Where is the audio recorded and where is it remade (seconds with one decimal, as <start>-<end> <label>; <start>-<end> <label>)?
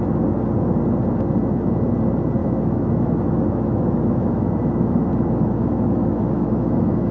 0.0-2.4 recorded; 2.4-7.1 remade